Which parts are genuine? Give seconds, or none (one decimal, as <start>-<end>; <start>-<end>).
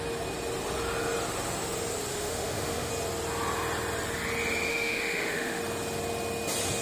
0.0-2.1; 2.9-4.7; 5.6-6.8